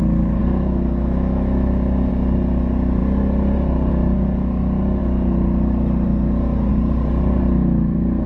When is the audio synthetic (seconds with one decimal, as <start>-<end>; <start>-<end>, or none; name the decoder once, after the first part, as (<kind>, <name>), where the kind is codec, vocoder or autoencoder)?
0.4-2.1 (autoencoder, DAC-VAE)